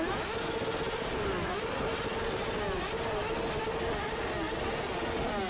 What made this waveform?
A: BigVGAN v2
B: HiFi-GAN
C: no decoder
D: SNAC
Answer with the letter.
C